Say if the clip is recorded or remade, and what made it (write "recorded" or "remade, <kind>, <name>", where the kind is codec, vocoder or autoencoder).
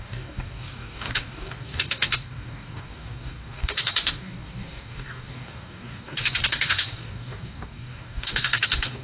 remade, codec, DAC